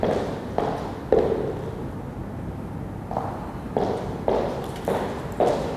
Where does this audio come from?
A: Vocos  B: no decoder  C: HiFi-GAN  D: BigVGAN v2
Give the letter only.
B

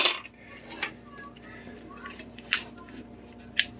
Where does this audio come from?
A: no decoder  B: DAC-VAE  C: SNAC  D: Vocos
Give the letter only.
A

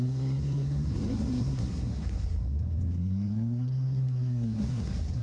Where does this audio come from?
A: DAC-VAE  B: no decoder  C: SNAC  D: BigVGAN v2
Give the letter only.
C